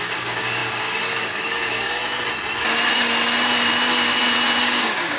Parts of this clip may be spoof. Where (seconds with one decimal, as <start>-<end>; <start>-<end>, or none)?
0.0-2.0; 4.6-5.2